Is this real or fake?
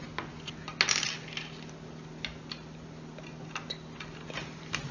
real